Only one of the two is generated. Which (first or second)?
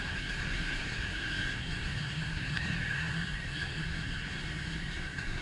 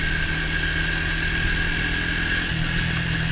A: first